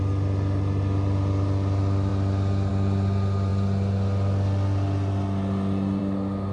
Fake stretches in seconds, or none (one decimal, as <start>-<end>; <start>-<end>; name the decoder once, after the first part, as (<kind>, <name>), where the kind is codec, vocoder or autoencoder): none